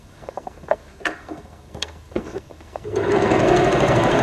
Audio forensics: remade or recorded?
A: remade